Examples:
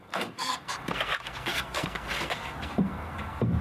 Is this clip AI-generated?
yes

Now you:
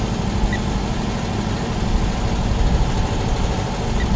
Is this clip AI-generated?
no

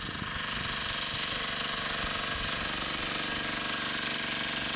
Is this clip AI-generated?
no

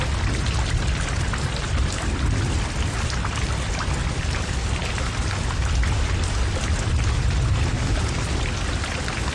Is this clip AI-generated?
no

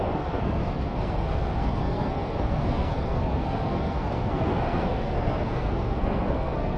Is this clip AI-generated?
yes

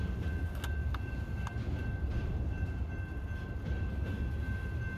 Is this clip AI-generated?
no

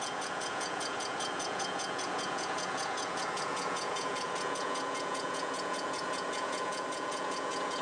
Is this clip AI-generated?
yes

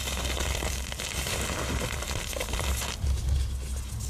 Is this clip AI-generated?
no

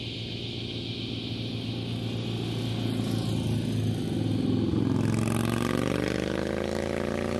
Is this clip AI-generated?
no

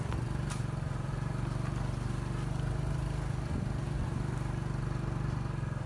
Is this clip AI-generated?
no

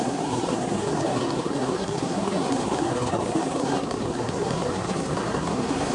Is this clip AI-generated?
yes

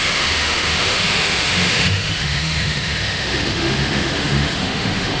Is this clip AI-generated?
yes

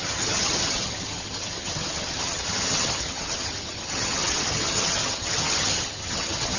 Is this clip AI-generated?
yes